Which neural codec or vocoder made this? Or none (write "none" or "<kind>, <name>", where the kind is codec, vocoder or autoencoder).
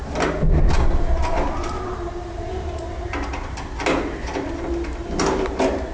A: none